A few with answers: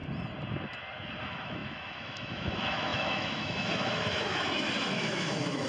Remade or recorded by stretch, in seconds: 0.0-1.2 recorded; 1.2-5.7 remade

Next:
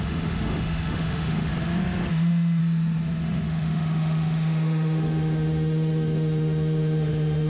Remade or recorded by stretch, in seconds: 0.0-1.5 remade; 1.5-2.1 recorded; 2.1-2.6 remade; 2.6-3.2 recorded; 3.2-7.5 remade

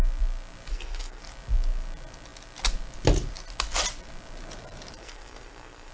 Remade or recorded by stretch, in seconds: 0.0-0.7 recorded; 0.7-1.2 remade; 1.2-5.0 recorded; 5.0-5.9 remade

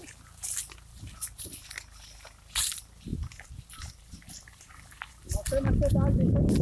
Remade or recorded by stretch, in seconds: 0.0-6.6 recorded